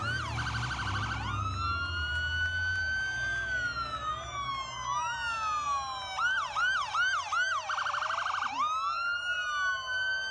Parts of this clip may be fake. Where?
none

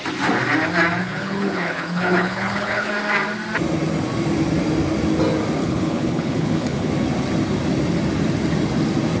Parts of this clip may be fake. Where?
1.0-2.9 (codec, HILCodec); 5.6-6.9

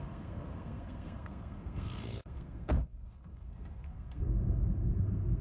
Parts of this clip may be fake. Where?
0.0-5.4 (codec, SNAC)

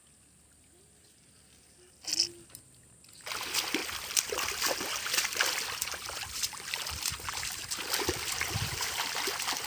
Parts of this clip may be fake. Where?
none

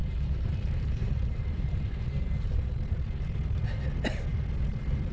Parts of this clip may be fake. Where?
0.0-2.7 (vocoder, BigVGAN v2)

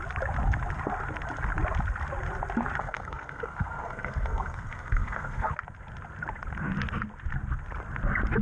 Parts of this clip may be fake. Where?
2.8-5.5 (codec, SNAC)

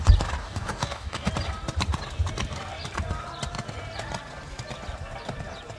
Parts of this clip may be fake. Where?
0.4-1.3 (codec, DAC)